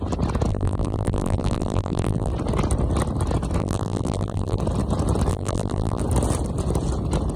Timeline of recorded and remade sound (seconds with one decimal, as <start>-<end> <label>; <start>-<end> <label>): 0.0-0.5 recorded; 0.5-2.3 remade; 2.3-3.6 recorded; 3.6-4.6 remade; 4.6-5.3 recorded; 5.3-6.0 remade; 6.0-7.4 recorded